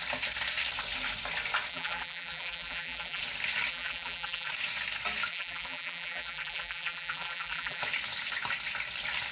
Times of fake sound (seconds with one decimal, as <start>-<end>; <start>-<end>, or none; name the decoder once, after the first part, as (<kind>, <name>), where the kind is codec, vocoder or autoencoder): 1.7-3.2 (vocoder, BigVGAN v2); 3.7-4.5; 5.3-7.8